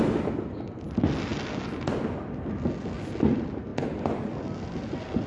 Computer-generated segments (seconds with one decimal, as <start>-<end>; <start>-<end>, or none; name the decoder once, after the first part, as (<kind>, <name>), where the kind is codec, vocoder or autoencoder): none